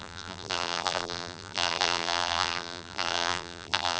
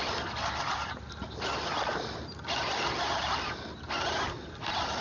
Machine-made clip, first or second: first